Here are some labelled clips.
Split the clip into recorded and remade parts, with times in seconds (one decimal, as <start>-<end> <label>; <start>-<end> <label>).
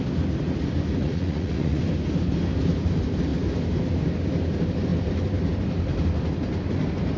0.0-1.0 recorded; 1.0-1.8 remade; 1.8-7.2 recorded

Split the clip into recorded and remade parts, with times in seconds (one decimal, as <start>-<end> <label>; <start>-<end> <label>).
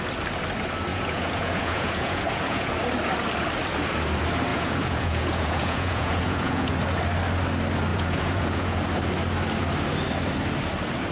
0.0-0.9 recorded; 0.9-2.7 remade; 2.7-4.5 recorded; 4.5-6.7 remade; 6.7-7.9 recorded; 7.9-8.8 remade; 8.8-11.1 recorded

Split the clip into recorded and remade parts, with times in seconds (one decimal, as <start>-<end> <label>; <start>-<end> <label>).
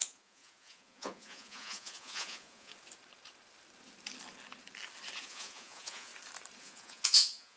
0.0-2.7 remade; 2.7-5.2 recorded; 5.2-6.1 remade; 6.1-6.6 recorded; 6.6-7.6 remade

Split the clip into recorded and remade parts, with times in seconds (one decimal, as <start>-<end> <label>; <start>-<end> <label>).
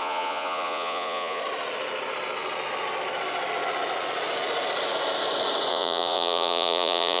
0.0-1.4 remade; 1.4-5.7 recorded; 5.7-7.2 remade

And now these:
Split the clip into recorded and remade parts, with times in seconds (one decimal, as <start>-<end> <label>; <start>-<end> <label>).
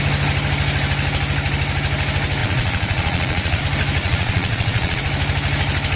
0.0-2.4 recorded; 2.4-3.6 remade; 3.6-4.0 recorded; 4.0-5.0 remade; 5.0-6.0 recorded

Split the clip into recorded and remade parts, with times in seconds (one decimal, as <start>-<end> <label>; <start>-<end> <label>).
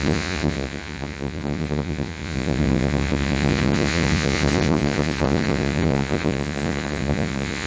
0.0-7.7 remade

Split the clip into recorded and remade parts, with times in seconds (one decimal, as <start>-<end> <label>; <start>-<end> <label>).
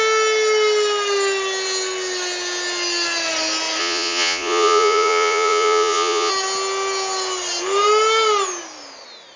0.0-3.8 recorded; 3.8-6.3 remade; 6.3-9.4 recorded